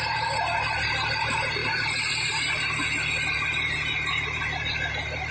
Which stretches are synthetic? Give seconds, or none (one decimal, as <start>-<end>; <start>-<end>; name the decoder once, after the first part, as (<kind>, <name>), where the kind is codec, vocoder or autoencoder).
0.0-5.3 (vocoder, BigVGAN v2)